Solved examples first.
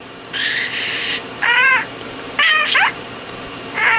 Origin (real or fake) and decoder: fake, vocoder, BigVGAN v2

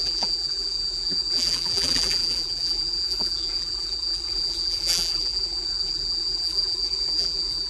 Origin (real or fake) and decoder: fake, vocoder, BigVGAN v2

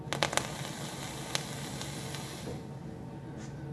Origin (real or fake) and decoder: real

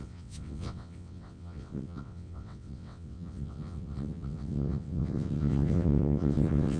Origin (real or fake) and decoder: fake, vocoder, WaveNeXt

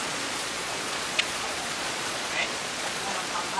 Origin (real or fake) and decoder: fake, vocoder, Vocos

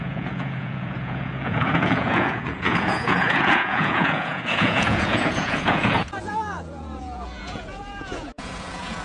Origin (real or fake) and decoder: fake, vocoder, Vocos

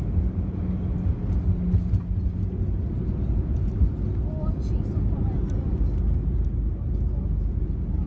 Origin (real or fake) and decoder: real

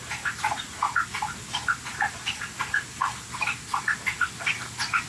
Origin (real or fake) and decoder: real